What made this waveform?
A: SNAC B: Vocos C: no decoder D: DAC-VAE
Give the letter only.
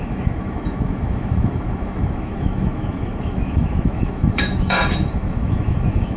D